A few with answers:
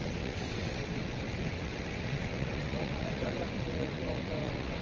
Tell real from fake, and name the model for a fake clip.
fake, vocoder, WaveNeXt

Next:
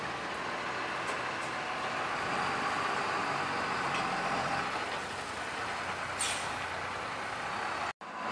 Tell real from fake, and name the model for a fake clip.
real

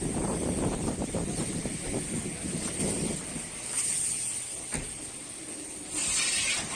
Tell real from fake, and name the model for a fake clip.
real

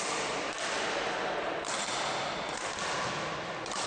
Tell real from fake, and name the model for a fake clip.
real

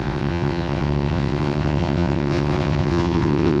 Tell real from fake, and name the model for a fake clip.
fake, vocoder, WaveNeXt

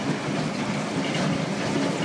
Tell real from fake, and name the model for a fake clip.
real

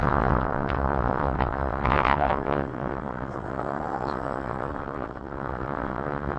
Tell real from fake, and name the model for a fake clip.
fake, vocoder, WaveNeXt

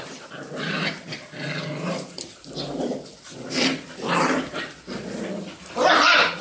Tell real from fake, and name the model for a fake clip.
real